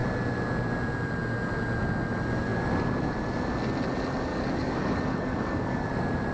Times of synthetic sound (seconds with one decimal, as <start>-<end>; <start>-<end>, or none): 4.3-5.8